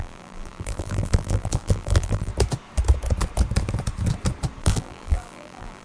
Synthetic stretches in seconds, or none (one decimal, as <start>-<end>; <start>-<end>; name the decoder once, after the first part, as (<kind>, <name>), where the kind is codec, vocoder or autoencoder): 0.0-2.3 (vocoder, BigVGAN v2); 4.6-5.8